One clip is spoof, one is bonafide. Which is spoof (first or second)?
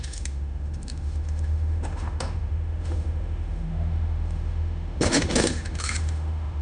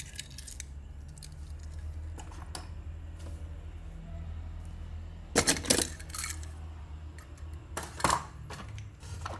first